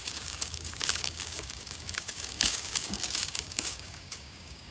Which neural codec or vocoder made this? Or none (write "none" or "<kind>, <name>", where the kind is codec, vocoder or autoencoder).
codec, DAC